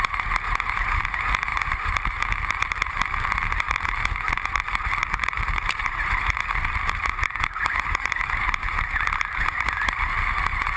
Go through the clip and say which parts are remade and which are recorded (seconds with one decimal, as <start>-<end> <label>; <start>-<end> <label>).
0.0-10.8 remade